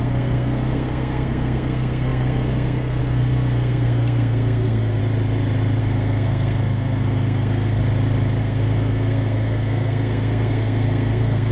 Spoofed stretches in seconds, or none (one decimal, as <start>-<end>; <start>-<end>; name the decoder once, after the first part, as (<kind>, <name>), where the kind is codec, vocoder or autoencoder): 0.0-5.0 (codec, SNAC); 5.8-7.8; 8.4-11.5